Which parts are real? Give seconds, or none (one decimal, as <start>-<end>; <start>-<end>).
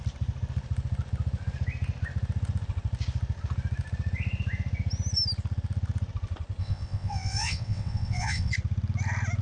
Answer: 0.0-6.6; 8.5-9.4